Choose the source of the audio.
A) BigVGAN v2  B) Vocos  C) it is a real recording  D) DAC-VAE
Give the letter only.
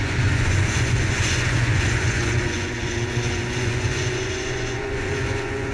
B